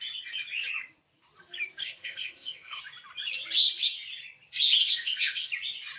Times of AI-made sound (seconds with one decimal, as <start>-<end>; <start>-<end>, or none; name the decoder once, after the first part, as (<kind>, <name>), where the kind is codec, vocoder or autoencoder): 1.8-2.8 (codec, ZipCodec); 4.8-5.5

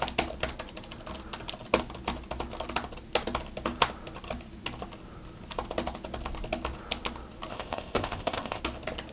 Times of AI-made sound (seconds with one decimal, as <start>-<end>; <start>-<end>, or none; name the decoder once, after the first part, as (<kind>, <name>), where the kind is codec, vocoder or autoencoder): 7.5-8.6 (codec, ZipCodec)

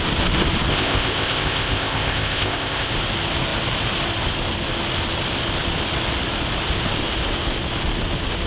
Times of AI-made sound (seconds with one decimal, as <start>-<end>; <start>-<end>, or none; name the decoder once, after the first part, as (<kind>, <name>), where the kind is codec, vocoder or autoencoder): 0.7-2.9 (codec, ZipCodec)

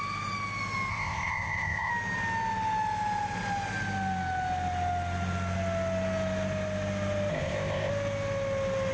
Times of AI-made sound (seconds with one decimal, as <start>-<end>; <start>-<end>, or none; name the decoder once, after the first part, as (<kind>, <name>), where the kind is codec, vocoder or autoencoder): 0.9-1.9 (codec, ZipCodec); 7.3-7.9

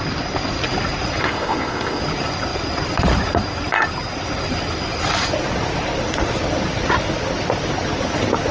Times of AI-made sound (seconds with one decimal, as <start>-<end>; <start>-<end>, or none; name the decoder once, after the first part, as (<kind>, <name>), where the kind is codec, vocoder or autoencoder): 1.2-2.0 (codec, ZipCodec)

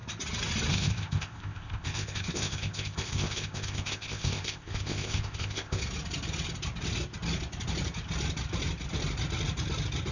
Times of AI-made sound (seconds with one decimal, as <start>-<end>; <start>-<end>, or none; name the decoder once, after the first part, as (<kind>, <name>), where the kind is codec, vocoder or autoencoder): 0.7-5.8 (codec, ZipCodec)

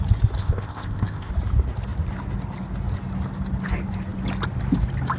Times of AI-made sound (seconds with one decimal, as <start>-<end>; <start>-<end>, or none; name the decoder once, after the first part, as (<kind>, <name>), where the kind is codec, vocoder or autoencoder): 0.4-1.3 (codec, ZipCodec)